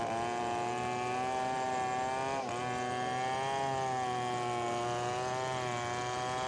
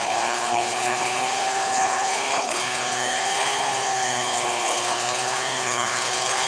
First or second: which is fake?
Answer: second